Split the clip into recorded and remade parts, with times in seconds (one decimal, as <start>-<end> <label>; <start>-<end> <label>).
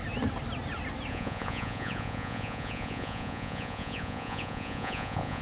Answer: 0.0-1.1 recorded; 1.1-5.4 remade